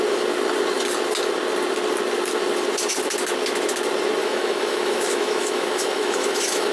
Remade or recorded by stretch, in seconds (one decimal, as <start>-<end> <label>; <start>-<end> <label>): 0.0-4.2 recorded; 4.2-6.7 remade